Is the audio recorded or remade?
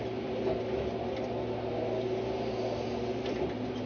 recorded